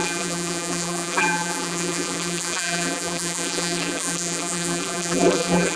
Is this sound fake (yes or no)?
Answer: yes